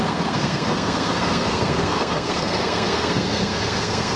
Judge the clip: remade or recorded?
remade